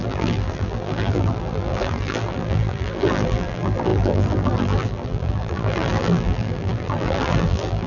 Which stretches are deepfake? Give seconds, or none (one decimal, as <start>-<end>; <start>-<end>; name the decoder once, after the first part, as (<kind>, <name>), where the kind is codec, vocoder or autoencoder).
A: 0.0-7.9 (vocoder, BigVGAN v2)